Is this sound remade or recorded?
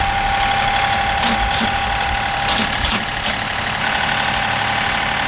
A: recorded